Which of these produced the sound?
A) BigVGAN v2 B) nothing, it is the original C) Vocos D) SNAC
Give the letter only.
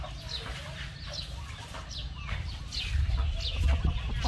B